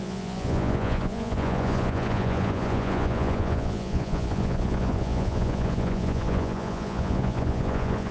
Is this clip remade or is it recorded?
remade